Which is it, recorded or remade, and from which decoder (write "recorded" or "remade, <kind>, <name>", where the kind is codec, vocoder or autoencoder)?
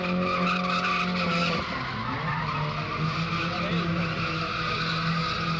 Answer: recorded